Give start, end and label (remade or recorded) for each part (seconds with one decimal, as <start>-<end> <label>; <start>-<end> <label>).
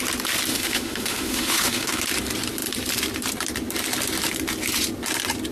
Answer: 0.0-0.5 recorded; 0.5-2.0 remade; 2.0-5.5 recorded